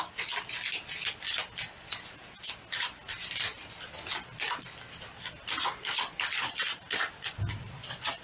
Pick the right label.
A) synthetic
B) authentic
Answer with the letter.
B